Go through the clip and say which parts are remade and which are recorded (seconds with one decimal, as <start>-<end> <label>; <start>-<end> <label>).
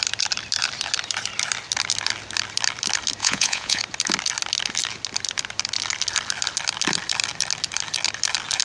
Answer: 0.0-3.2 recorded; 3.2-3.8 remade; 3.8-8.6 recorded